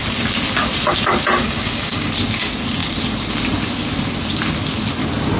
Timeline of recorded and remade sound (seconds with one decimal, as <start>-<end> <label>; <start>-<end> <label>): 0.0-1.4 recorded; 1.4-2.1 remade; 2.1-5.4 recorded